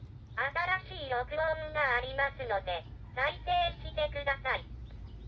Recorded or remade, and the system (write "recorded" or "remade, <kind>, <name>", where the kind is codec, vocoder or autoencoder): recorded